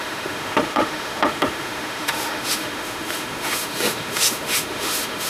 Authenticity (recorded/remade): remade